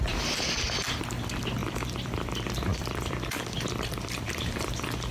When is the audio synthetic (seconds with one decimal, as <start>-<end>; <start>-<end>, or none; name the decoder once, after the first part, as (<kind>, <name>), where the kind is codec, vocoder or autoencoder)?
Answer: 1.6-5.1 (vocoder, BigVGAN v2)